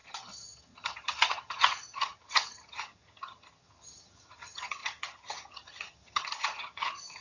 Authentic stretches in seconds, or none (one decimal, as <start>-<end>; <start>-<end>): none